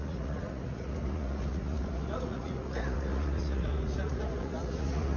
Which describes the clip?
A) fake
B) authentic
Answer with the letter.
A